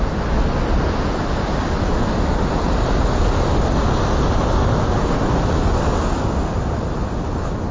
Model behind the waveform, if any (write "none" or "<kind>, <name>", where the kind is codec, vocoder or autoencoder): none